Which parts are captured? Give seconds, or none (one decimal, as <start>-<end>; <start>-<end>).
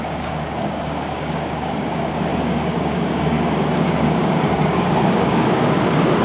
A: none